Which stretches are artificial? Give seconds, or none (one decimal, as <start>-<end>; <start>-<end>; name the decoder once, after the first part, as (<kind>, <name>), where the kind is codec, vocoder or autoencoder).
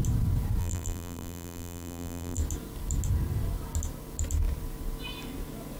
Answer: 0.6-2.4 (vocoder, BigVGAN v2)